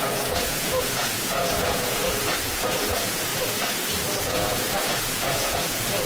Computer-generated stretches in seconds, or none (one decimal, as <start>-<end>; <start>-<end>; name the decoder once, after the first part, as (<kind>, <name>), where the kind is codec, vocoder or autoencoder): 0.0-3.3 (vocoder, Vocos); 4.3-6.1